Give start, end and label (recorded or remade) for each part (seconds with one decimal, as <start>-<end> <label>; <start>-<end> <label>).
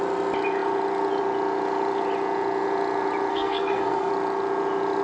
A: 0.0-3.3 recorded; 3.3-4.1 remade; 4.1-5.0 recorded